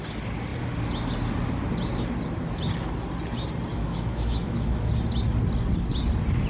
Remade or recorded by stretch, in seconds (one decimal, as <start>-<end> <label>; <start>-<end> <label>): 0.0-3.7 recorded; 3.7-4.9 remade; 4.9-6.5 recorded